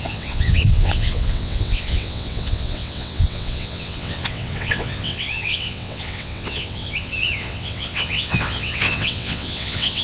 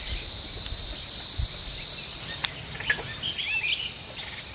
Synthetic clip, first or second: first